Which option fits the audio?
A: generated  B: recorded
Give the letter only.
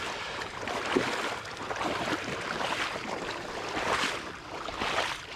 B